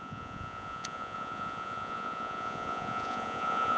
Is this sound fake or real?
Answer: fake